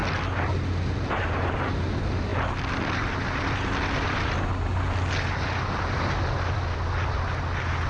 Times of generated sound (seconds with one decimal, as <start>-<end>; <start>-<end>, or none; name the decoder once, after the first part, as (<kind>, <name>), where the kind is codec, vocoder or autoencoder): none

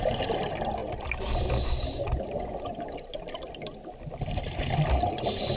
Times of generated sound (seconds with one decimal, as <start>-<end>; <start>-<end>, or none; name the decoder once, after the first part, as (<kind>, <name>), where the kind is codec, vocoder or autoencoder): none